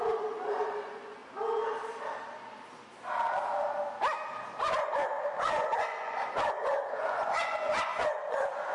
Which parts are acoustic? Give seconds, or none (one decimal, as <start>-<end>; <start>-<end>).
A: 1.2-4.6